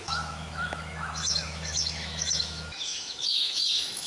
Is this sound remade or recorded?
remade